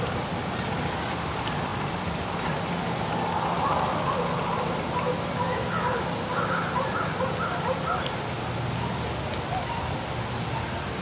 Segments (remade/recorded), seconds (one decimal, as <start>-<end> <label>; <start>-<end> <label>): 0.0-1.7 recorded; 1.7-2.3 remade; 2.3-11.0 recorded